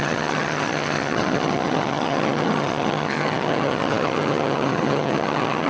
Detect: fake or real fake